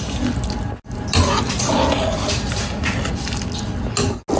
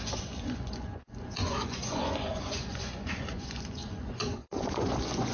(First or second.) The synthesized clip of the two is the second